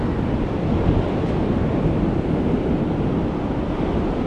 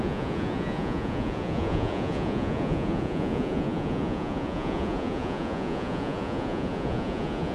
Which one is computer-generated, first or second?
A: second